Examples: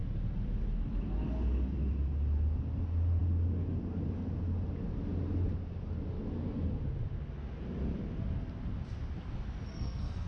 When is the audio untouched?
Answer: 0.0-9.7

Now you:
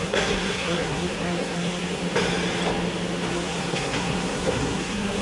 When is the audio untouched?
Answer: 2.0-3.3

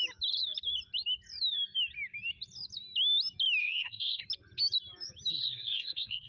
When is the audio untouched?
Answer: 0.0-3.6; 4.2-5.3

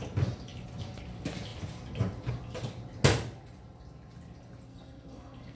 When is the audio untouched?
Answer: 0.0-4.7

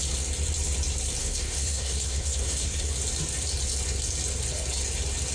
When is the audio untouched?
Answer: 0.0-1.2; 2.9-5.3

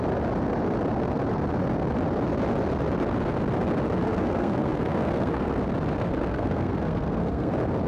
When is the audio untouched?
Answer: 0.0-4.0; 5.6-6.0; 7.5-7.9